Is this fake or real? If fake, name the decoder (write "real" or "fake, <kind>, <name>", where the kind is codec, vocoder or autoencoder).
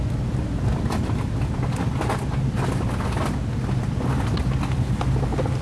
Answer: real